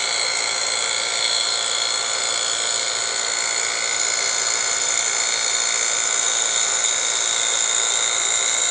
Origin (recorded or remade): recorded